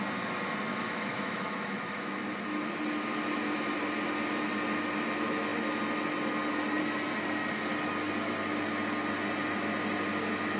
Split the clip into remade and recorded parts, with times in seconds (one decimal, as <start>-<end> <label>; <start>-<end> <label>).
0.0-0.7 recorded; 0.7-2.2 remade; 2.2-10.6 recorded